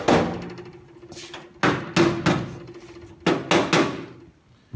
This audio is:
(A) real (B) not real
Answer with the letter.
A